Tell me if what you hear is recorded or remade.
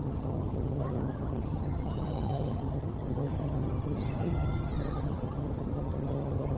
remade